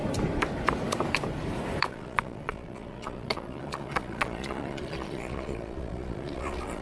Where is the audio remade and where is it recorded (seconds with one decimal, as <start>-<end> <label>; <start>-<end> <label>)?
0.0-1.9 recorded; 1.9-6.8 remade